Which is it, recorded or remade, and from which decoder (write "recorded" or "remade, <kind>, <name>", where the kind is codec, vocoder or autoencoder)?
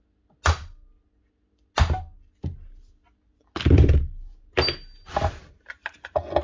recorded